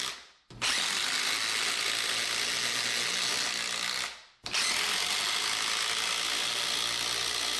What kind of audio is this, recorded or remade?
recorded